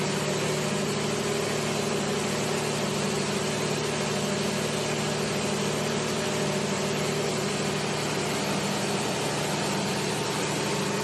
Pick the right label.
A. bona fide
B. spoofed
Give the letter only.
A